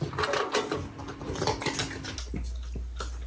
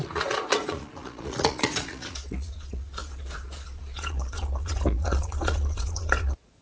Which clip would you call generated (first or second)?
second